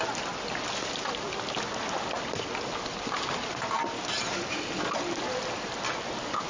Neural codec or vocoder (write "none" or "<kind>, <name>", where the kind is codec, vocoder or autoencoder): none